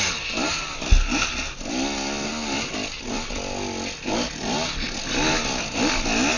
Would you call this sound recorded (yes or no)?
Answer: yes